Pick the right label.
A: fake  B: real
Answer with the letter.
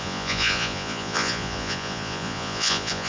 A